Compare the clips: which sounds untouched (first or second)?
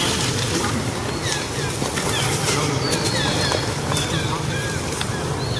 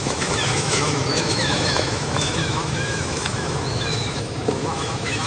first